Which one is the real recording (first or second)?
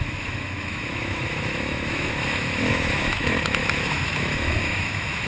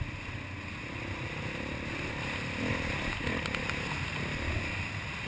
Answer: second